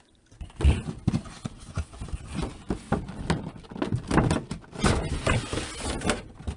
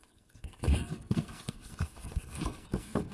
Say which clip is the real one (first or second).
first